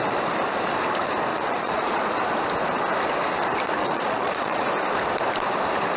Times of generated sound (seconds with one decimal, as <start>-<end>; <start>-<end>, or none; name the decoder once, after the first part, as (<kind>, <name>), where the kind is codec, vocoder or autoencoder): 1.3-2.0 (vocoder, Vocos); 3.8-4.6